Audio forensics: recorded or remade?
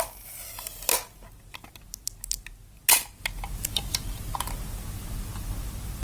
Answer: recorded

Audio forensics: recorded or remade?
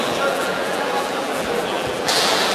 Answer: remade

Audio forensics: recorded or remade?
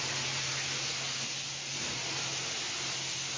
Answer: recorded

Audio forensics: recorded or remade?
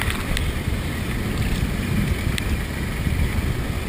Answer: recorded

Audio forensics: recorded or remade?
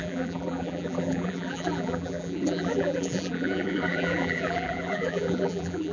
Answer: remade